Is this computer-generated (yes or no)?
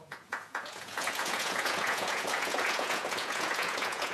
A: yes